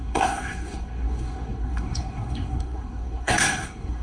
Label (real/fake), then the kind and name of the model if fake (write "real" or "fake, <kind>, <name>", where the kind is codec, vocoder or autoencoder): fake, codec, SNAC